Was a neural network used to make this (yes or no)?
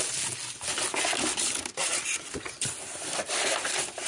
no